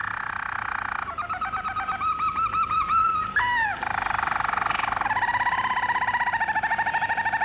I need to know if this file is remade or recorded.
recorded